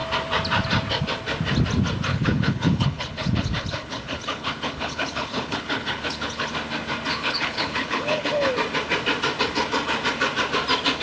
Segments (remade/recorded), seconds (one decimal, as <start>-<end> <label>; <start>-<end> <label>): 0.0-2.1 recorded; 2.1-6.5 remade; 6.5-7.1 recorded; 7.1-8.5 remade; 8.5-11.0 recorded